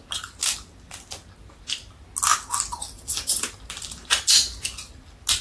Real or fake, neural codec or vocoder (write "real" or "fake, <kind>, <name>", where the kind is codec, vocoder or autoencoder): real